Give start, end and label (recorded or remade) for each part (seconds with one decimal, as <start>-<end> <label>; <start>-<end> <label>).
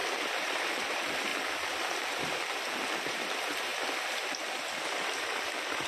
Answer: 0.0-5.9 remade